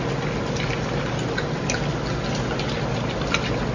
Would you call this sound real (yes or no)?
yes